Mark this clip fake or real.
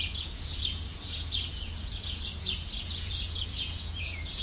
fake